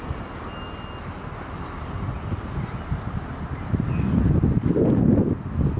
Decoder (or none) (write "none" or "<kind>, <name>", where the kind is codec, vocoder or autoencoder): none